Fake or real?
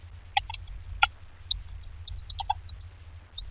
real